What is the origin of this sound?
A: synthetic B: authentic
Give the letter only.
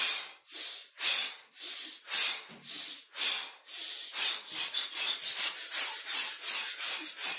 B